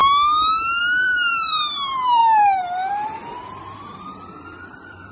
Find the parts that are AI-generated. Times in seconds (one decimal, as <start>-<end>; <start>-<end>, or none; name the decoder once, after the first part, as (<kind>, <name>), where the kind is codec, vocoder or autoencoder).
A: 0.8-5.1 (vocoder, BigVGAN v2)